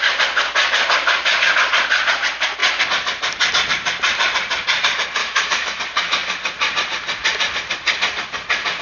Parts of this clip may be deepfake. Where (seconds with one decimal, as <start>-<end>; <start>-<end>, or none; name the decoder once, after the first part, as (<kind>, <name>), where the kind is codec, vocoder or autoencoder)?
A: 5.2-5.8 (autoencoder, DAC-VAE)